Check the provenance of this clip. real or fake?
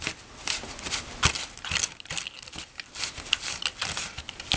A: real